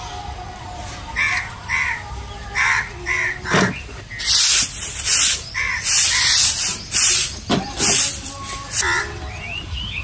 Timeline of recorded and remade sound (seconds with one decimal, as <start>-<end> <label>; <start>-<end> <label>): 0.0-10.0 recorded